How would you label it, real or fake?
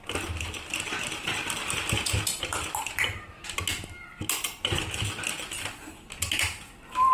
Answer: real